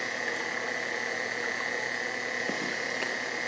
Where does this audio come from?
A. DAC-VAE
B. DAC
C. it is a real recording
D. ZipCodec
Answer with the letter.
C